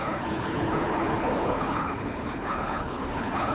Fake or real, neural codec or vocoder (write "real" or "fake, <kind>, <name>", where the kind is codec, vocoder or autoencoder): fake, codec, HILCodec